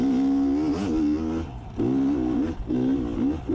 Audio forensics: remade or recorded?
recorded